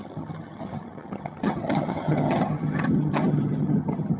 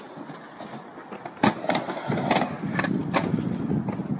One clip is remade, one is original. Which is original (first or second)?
second